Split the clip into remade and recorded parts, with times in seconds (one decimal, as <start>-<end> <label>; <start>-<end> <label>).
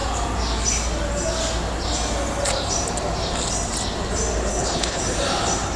0.0-4.5 recorded; 4.5-5.0 remade; 5.0-5.8 recorded